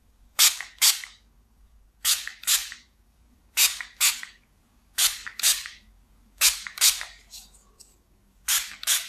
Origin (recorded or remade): remade